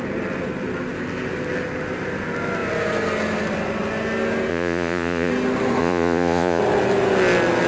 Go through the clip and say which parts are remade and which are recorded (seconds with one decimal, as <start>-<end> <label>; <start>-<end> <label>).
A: 0.0-4.5 recorded; 4.5-5.3 remade; 5.3-5.8 recorded; 5.8-6.6 remade; 6.6-7.7 recorded